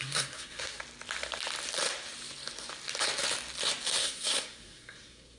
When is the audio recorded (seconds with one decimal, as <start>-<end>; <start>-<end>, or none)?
0.8-4.0